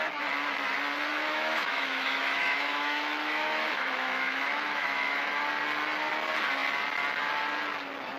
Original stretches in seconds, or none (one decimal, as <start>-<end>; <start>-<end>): 0.0-1.1; 5.4-8.2